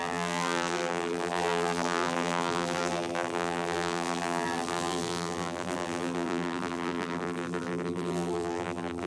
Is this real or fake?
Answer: fake